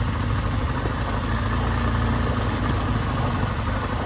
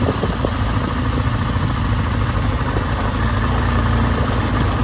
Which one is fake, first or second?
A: second